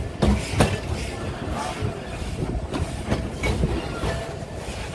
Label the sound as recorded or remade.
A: recorded